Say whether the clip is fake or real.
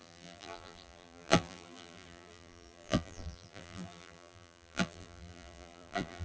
fake